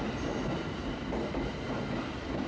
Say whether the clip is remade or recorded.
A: recorded